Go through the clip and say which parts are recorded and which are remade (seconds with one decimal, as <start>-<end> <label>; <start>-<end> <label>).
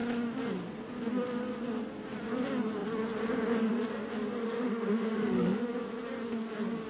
0.0-4.4 recorded; 4.4-5.7 remade; 5.7-6.9 recorded